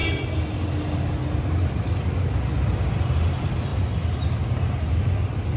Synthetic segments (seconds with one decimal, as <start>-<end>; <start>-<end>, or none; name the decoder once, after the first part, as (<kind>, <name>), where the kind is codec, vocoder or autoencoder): 3.7-5.6 (vocoder, BigVGAN v2)